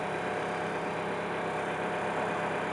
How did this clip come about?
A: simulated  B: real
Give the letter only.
A